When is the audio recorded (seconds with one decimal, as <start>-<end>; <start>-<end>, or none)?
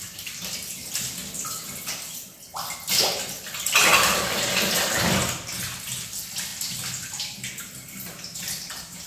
0.0-3.9; 4.4-9.1